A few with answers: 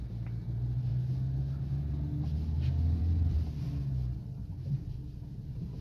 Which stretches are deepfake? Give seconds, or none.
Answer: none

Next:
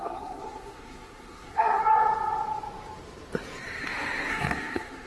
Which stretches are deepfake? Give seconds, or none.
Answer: 0.0-1.8; 4.3-5.1

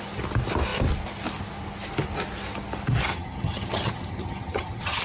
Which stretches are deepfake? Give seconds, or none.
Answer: 3.1-5.0

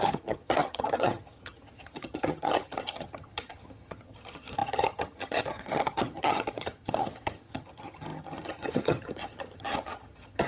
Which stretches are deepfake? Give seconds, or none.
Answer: 0.0-10.5

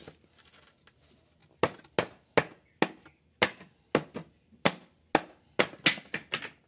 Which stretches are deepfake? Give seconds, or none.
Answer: none

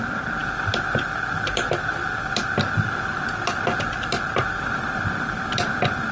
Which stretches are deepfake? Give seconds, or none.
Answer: none